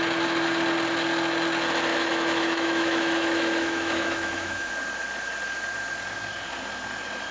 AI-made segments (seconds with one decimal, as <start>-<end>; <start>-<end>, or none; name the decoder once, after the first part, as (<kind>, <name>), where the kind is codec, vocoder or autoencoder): 1.9-4.7 (autoencoder, DAC-VAE)